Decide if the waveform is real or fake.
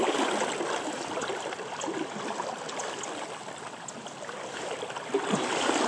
real